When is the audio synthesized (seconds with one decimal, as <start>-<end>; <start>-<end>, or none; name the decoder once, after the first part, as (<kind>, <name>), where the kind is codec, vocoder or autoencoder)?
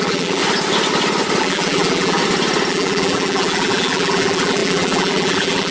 0.0-0.4 (vocoder, BigVGAN v2); 1.4-2.2; 2.7-5.7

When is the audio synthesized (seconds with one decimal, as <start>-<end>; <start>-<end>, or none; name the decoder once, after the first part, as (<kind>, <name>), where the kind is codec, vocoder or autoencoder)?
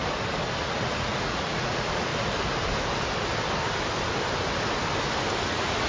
0.6-2.1 (vocoder, Vocos); 5.4-5.9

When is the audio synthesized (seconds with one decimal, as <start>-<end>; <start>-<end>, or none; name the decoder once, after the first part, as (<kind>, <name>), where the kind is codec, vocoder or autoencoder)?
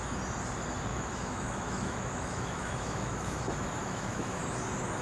0.9-3.4 (autoencoder, DAC-VAE); 3.8-4.4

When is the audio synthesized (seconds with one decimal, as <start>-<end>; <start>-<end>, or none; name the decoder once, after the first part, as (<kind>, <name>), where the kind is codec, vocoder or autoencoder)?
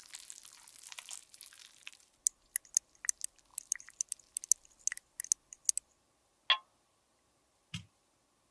1.2-2.2 (vocoder, BigVGAN v2); 3.5-4.5